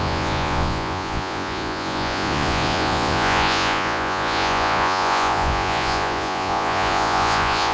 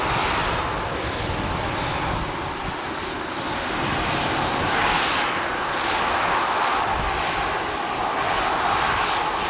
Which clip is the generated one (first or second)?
first